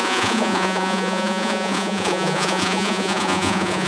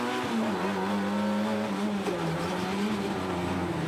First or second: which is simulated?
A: first